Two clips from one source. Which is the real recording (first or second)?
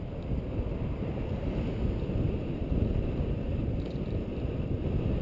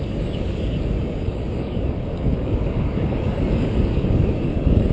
first